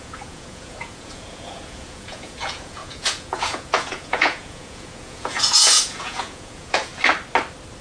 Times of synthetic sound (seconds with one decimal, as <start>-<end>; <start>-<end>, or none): 0.0-6.9